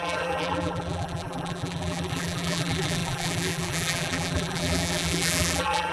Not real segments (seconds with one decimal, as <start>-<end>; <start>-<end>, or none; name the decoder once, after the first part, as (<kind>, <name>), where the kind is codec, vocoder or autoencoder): 0.0-5.9 (vocoder, BigVGAN v2)